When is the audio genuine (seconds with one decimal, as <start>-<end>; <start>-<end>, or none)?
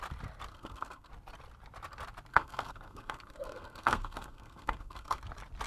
0.0-0.5; 1.1-2.3; 5.2-5.7